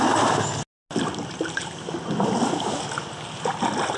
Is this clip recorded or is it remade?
recorded